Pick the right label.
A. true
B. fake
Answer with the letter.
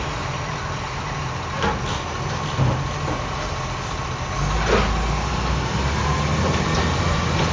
A